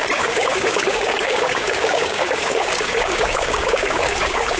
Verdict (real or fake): fake